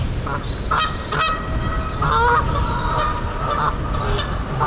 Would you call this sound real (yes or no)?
yes